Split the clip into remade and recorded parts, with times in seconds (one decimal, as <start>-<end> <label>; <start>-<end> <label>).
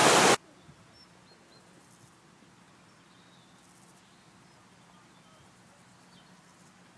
0.0-7.0 recorded